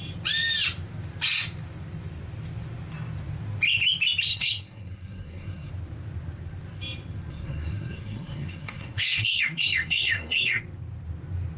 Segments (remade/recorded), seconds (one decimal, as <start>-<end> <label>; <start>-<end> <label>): 0.0-4.3 recorded; 4.3-5.7 remade; 5.7-7.3 recorded; 7.3-10.6 remade; 10.6-11.6 recorded